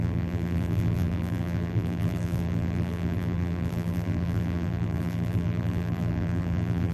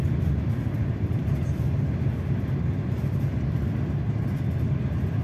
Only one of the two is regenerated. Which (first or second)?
first